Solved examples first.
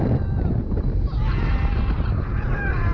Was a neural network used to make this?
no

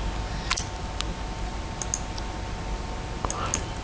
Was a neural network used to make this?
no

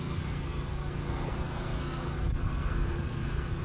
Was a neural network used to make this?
yes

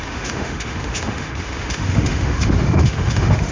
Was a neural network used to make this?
yes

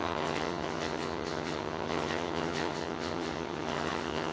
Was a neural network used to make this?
yes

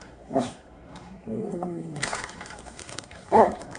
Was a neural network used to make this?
yes